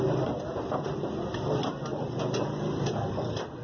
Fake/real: real